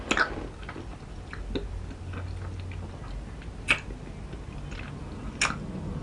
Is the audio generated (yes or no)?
no